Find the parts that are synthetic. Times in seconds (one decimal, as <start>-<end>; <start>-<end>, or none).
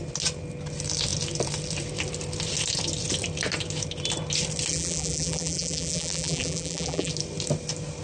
4.7-7.1